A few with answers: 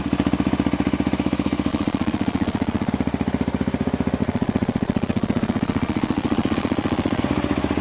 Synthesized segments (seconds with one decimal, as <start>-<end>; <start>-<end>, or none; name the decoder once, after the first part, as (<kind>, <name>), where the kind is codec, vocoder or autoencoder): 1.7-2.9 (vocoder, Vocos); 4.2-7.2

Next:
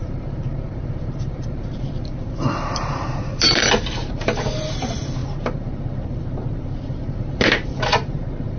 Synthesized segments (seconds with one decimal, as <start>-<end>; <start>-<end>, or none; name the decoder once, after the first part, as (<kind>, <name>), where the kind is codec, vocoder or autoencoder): 0.0-8.6 (vocoder, BigVGAN v2)

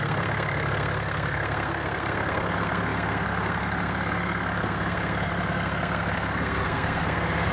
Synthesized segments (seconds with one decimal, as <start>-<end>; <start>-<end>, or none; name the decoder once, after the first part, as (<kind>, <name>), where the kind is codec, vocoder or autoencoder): 0.0-7.5 (codec, SNAC)